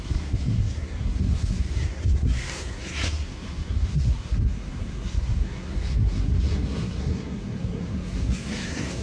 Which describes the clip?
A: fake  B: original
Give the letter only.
A